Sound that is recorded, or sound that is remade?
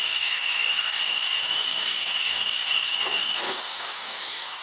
remade